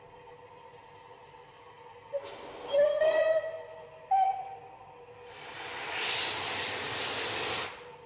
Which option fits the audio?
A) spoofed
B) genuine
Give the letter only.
B